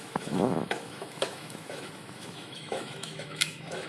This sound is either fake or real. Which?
fake